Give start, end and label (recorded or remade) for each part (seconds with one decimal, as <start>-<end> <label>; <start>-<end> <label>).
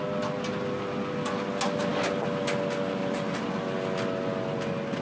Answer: 0.0-5.0 recorded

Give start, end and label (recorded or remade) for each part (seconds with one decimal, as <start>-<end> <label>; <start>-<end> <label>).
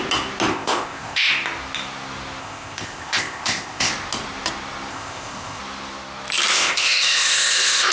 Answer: 0.0-0.5 recorded; 0.5-1.3 remade; 1.3-2.4 recorded; 2.4-3.9 remade; 3.9-4.9 recorded; 4.9-5.6 remade; 5.6-6.5 recorded; 6.5-7.9 remade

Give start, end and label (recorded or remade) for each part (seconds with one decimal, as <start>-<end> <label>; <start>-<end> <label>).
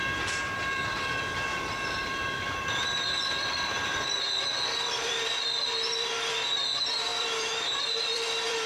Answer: 0.0-8.7 remade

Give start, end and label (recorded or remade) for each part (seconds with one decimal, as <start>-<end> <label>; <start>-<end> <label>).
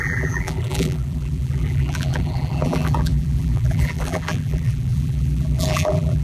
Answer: 0.0-6.2 remade